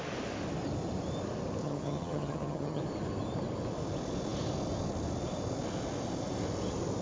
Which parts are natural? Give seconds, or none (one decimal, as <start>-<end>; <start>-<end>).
0.0-1.6; 2.8-7.0